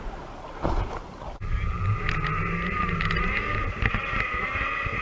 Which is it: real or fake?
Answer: real